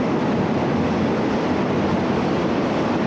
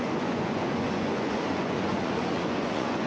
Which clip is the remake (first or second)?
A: second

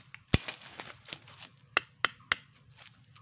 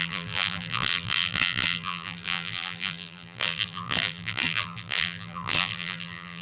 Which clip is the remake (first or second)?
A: second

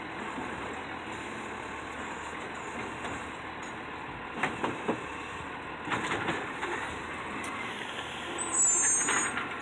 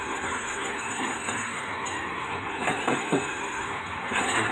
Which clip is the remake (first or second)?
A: second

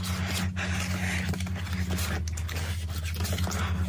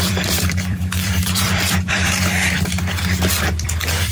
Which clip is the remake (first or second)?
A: second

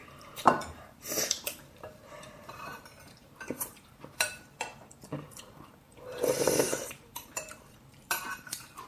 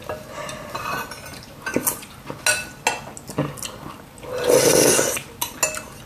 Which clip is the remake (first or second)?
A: first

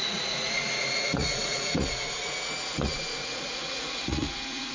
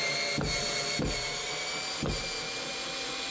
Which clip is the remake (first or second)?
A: first